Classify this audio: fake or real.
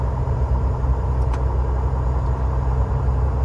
real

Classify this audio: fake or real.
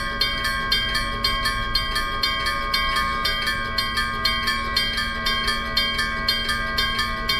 real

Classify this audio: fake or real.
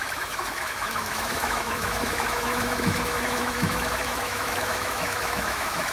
fake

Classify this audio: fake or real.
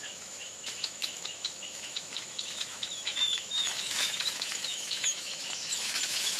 fake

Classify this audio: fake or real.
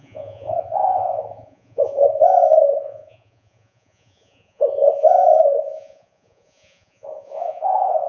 fake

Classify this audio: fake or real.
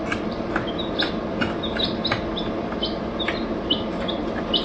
fake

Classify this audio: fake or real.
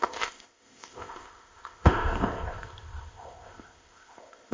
fake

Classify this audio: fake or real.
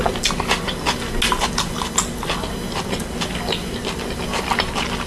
real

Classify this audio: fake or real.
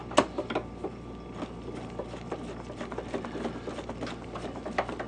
real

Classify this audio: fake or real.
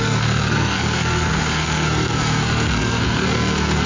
fake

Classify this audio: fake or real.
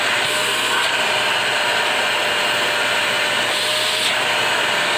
real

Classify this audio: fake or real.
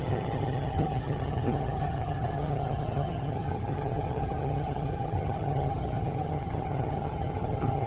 fake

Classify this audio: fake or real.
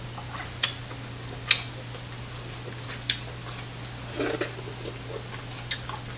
real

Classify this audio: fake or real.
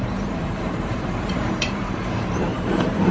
fake